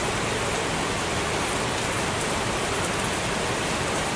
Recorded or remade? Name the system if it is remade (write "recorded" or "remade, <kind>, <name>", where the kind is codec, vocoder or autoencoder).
recorded